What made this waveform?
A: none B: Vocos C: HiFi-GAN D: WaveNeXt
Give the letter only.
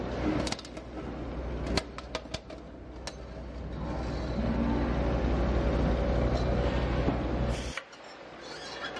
A